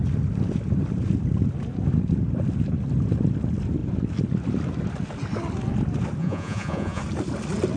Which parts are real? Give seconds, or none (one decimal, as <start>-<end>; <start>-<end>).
0.0-6.2; 7.0-7.8